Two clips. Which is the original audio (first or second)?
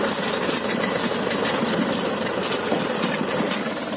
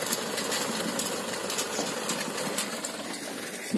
second